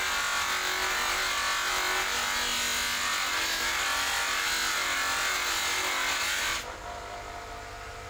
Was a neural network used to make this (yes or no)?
no